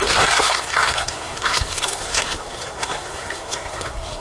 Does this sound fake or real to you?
fake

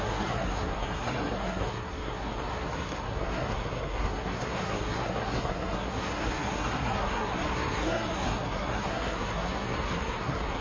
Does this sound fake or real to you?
fake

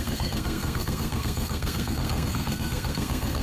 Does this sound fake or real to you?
fake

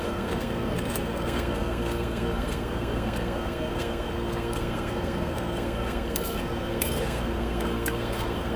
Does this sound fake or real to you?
fake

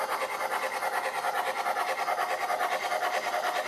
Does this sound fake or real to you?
real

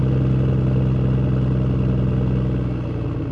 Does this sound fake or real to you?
real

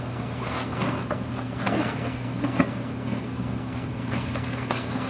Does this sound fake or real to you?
fake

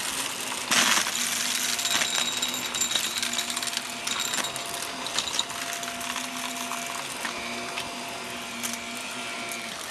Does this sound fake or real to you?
real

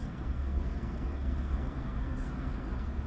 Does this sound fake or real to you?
fake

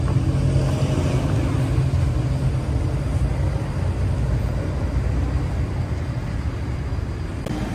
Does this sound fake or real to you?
real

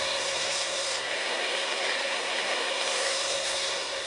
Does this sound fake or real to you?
fake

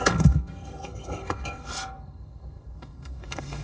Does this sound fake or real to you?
fake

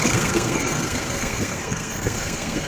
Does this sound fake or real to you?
fake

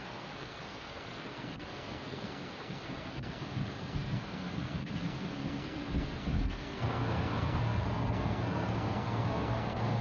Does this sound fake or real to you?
fake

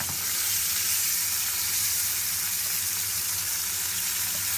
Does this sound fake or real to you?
real